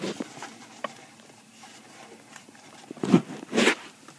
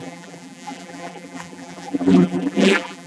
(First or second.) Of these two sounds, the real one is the first